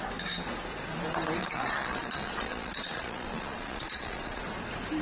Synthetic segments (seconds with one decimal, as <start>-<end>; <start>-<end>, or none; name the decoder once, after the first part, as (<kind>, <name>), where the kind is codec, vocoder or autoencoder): 1.4-4.4 (vocoder, Vocos)